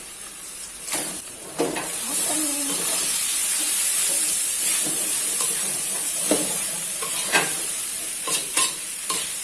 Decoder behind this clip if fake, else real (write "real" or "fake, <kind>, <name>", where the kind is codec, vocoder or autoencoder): fake, vocoder, BigVGAN v2